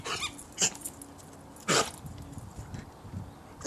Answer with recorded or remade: recorded